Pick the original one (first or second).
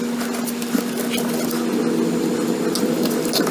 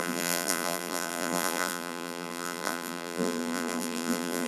first